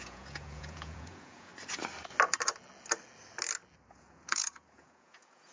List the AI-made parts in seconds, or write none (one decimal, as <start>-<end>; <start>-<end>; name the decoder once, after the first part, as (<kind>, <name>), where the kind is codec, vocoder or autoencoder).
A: 0.0-1.5 (vocoder, Vocos); 3.9-5.5